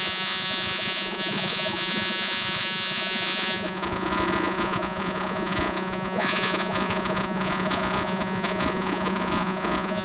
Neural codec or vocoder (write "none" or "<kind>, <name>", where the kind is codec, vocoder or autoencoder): vocoder, Vocos